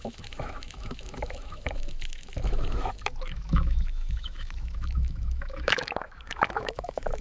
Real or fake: fake